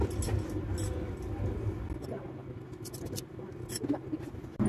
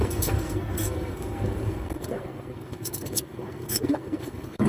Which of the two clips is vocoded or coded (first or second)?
second